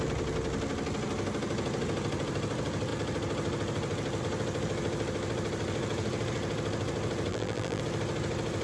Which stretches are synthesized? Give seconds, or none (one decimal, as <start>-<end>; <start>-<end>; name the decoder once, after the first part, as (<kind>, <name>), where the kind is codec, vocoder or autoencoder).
7.3-7.8 (vocoder, BigVGAN v2)

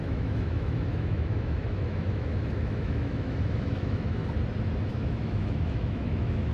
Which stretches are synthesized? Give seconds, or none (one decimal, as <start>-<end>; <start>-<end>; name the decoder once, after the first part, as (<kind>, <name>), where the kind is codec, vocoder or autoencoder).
0.0-4.2 (autoencoder, DAC-VAE); 4.9-6.5

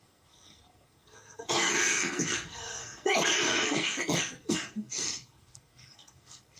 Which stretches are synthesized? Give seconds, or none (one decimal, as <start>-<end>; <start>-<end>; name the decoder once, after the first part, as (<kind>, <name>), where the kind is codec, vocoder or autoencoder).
0.0-6.6 (codec, SNAC)